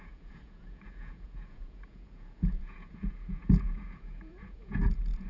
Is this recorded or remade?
remade